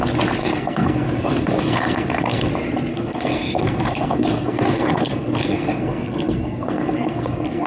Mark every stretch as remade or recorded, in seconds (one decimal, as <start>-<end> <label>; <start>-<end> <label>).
0.0-0.4 recorded; 0.4-2.5 remade; 2.5-2.9 recorded; 2.9-7.7 remade